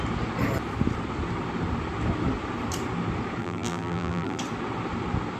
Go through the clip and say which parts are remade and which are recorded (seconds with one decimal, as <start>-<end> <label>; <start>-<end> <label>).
0.0-3.4 recorded; 3.4-4.4 remade; 4.4-5.4 recorded